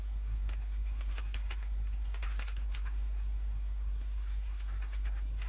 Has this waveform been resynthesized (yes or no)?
yes